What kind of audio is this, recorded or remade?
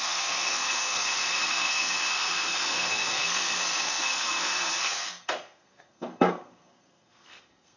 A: remade